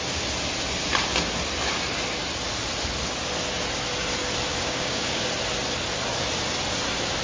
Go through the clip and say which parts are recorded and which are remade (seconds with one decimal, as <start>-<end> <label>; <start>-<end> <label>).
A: 0.0-4.5 recorded; 4.5-5.2 remade; 5.2-7.2 recorded